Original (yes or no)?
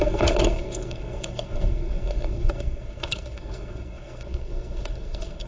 no